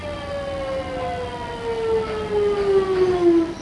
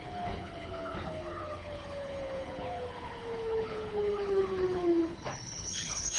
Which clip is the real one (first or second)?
first